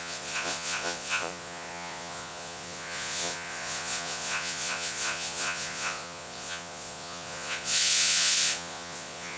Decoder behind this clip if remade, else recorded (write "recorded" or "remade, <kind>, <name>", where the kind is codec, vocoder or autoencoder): remade, vocoder, Vocos